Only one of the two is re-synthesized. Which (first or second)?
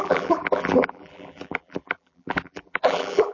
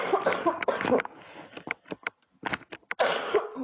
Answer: first